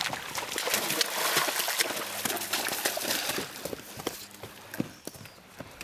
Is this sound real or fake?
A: real